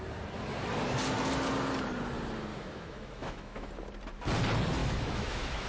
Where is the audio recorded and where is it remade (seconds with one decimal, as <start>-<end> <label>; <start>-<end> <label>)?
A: 0.0-2.5 recorded; 2.5-3.7 remade; 3.7-4.8 recorded; 4.8-5.7 remade